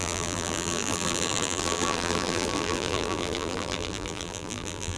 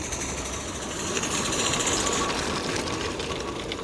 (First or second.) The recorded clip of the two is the second